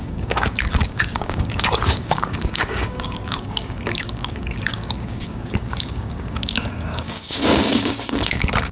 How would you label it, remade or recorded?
remade